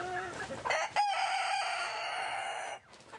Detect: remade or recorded recorded